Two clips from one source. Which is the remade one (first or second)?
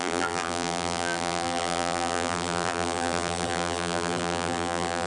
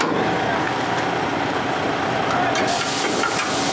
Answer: first